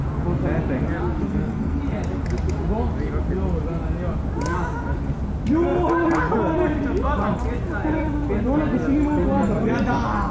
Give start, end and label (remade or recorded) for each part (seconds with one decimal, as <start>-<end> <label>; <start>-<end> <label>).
0.0-1.2 recorded; 1.2-1.8 remade; 1.8-10.3 recorded

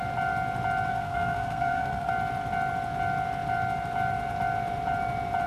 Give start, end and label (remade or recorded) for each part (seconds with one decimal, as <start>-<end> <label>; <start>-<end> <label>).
0.0-0.9 recorded; 0.9-2.1 remade; 2.1-5.5 recorded

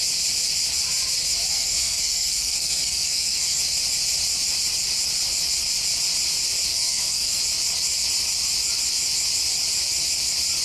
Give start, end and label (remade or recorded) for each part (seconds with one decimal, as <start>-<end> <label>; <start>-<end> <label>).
0.0-1.5 recorded; 1.5-3.6 remade; 3.6-6.7 recorded; 6.7-7.4 remade; 7.4-10.6 recorded

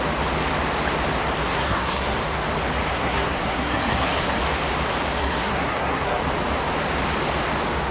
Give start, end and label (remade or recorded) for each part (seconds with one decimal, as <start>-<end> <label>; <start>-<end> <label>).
0.0-1.4 recorded; 1.4-2.2 remade; 2.2-2.9 recorded; 2.9-4.4 remade; 4.4-5.2 recorded; 5.2-6.2 remade; 6.2-7.9 recorded

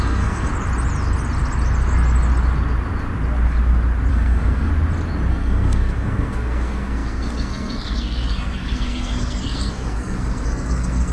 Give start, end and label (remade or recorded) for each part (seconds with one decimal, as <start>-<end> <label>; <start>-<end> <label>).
0.0-0.5 remade; 0.5-4.1 recorded; 4.1-4.7 remade; 4.7-5.3 recorded; 5.3-11.1 remade